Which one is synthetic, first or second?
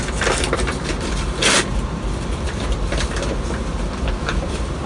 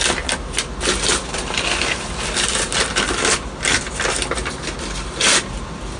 first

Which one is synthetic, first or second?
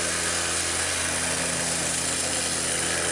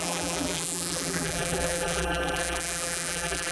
second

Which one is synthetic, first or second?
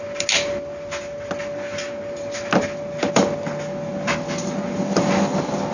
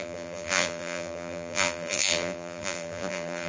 second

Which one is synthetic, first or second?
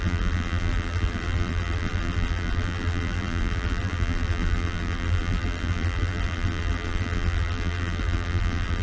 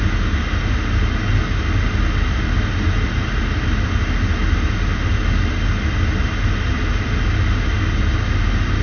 first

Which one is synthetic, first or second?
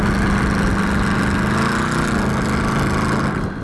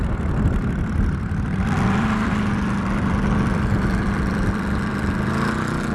second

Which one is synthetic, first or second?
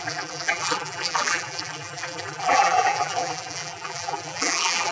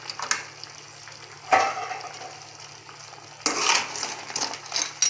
first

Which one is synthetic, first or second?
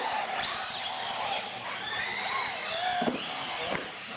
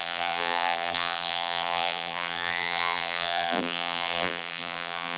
second